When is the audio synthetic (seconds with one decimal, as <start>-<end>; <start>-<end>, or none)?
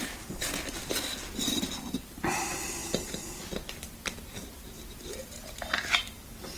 0.0-2.8; 3.4-6.6